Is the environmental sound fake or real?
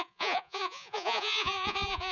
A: fake